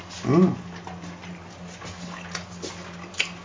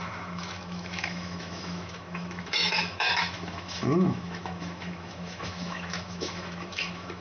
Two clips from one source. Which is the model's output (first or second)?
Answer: second